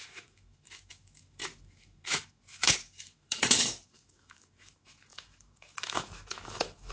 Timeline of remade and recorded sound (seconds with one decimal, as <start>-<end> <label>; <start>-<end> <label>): 0.0-6.9 remade